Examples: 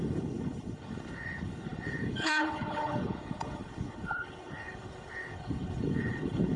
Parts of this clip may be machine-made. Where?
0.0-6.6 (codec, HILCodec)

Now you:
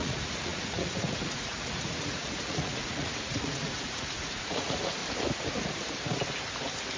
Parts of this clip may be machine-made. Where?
0.0-5.0 (vocoder, Vocos)